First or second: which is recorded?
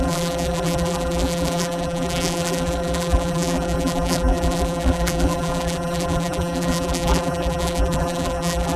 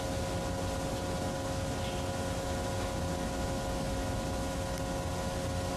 second